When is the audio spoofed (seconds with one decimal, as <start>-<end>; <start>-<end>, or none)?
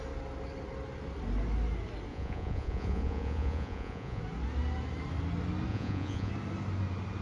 2.1-4.2; 5.7-6.3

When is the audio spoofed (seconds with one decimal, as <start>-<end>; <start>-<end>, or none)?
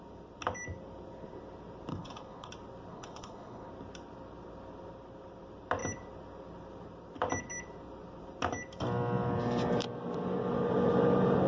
1.9-2.5; 2.9-3.7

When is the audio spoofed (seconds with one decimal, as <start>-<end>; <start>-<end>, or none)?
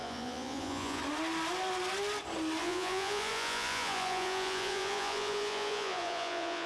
0.0-1.0; 2.6-6.7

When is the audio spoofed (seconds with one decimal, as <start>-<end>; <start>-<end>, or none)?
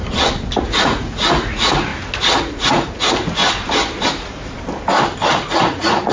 0.6-1.9; 2.4-3.4; 5.3-6.1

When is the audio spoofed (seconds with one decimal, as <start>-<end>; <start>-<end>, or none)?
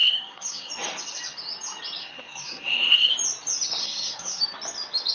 0.0-0.7; 2.0-3.1; 3.8-4.4